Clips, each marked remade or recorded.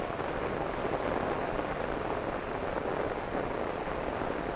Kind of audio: recorded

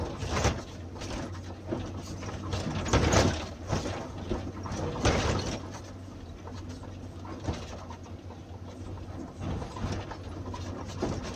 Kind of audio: recorded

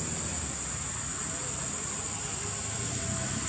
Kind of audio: recorded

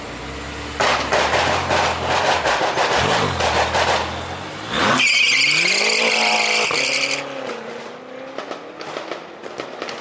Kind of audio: recorded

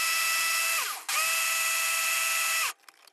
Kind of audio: recorded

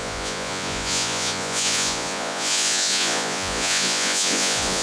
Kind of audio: remade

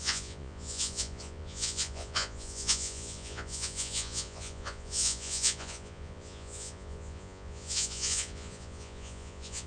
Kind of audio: remade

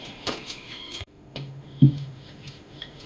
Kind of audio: remade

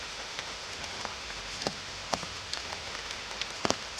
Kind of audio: remade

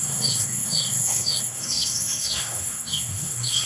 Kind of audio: remade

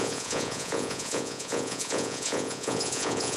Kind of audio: remade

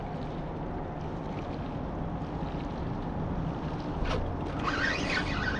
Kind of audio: recorded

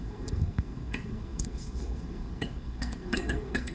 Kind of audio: remade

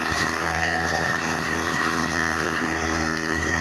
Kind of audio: remade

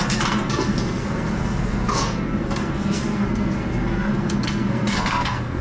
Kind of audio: remade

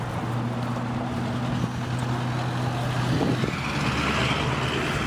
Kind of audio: recorded